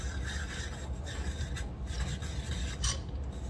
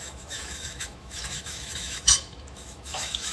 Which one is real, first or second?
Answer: first